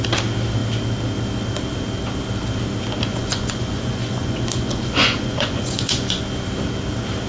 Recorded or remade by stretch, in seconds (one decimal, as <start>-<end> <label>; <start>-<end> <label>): 0.0-3.1 recorded; 3.1-6.2 remade; 6.2-7.3 recorded